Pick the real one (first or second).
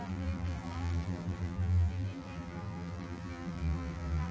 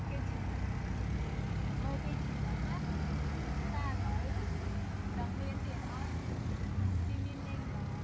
second